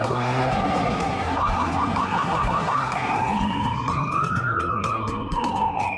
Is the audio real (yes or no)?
no